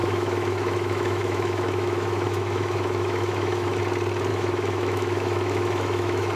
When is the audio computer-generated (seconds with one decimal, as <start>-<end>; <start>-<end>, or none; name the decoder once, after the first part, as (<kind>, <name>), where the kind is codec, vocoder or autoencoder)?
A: 0.0-3.8 (autoencoder, DAC-VAE); 4.3-6.4